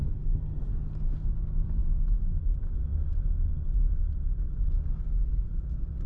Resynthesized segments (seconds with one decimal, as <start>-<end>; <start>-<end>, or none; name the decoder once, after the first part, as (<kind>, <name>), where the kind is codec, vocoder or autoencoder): none

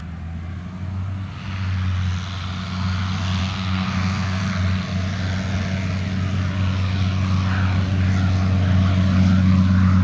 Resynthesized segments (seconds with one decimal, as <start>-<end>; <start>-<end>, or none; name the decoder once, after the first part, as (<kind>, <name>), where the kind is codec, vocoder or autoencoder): 3.4-4.4 (codec, SNAC)

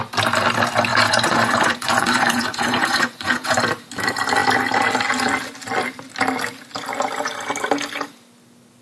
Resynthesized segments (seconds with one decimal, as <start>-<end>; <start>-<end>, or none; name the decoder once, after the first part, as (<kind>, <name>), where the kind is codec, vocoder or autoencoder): 0.9-3.6 (vocoder, Vocos)